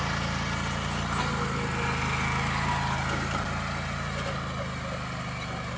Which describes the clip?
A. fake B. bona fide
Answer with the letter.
B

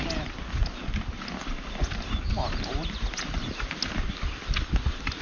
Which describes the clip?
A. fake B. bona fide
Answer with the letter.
B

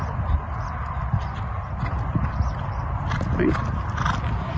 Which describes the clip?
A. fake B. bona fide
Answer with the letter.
B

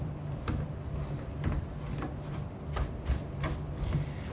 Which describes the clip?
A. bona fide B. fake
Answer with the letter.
A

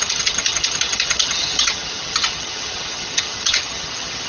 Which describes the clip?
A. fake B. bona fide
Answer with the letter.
A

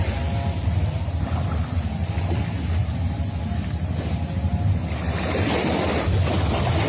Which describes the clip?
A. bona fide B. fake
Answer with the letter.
A